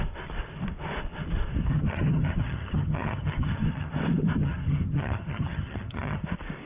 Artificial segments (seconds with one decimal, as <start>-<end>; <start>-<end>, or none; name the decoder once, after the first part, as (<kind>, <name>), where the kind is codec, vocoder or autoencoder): 1.7-3.9 (vocoder, HiFi-GAN); 4.4-6.2